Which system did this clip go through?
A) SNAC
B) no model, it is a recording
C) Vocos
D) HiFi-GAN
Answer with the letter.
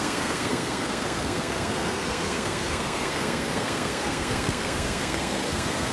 A